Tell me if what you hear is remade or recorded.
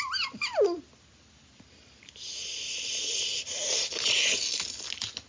recorded